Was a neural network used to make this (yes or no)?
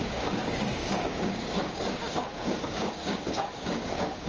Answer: yes